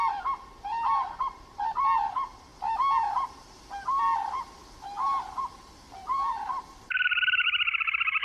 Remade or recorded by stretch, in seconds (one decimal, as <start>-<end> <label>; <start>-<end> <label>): 0.0-2.5 remade; 2.5-3.1 recorded; 3.1-4.6 remade; 4.6-5.2 recorded; 5.2-8.2 remade